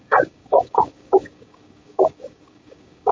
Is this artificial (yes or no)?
yes